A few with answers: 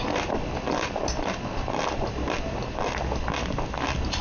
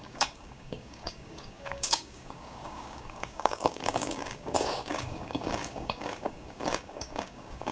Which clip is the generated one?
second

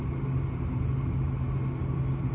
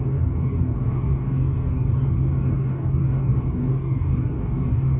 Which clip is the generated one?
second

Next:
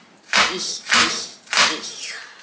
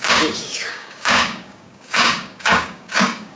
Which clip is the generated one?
second